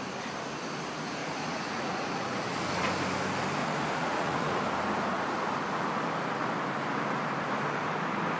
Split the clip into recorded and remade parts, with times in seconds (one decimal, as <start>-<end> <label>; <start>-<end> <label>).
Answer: 0.0-1.2 recorded; 1.2-2.4 remade; 2.4-3.6 recorded; 3.6-4.6 remade; 4.6-8.4 recorded